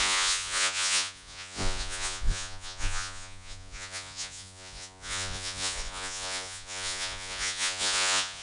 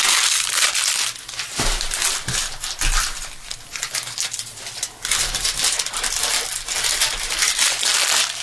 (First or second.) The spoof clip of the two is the first